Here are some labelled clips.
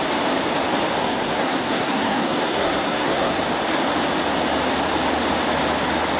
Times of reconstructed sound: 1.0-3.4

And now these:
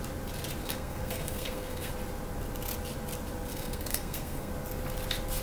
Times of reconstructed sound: 0.6-1.9; 3.5-4.5

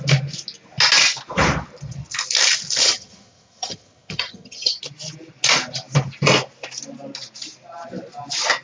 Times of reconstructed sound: 2.8-4.8

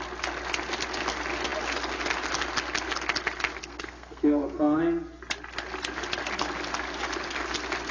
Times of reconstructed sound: 3.6-4.8

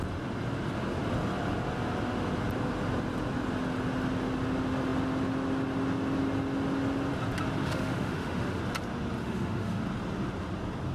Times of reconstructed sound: 7.6-8.6; 9.2-9.8